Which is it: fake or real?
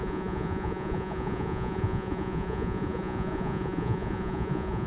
fake